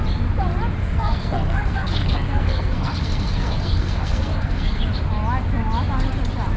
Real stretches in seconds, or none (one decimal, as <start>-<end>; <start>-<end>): 0.0-0.8; 4.8-6.6